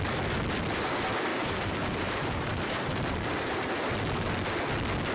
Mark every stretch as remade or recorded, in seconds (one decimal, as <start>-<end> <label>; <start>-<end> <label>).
0.0-1.3 recorded; 1.3-3.9 remade; 3.9-5.1 recorded